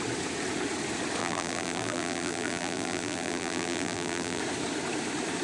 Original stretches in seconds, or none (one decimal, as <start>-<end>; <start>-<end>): 0.0-1.2; 4.4-5.4